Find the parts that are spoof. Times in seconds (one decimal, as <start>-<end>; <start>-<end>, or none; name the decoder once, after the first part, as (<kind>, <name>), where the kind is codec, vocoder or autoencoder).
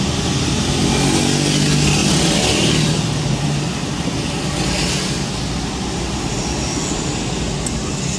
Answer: none